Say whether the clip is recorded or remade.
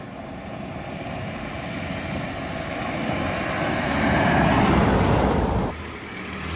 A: recorded